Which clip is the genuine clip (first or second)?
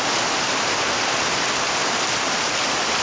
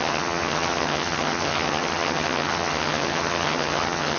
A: first